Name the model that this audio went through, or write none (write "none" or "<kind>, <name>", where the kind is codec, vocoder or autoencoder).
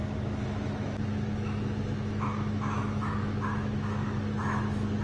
autoencoder, DAC-VAE